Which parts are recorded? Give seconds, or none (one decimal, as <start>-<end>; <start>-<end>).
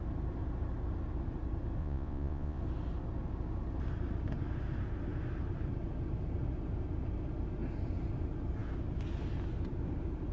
0.0-1.8; 2.6-10.3